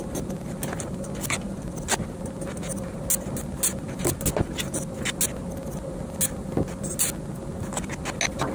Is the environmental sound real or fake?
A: real